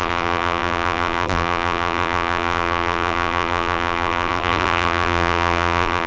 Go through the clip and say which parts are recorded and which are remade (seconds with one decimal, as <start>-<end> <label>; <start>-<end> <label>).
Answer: 0.0-6.1 remade